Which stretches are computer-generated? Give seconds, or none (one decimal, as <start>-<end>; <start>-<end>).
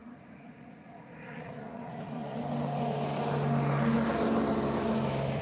0.0-2.4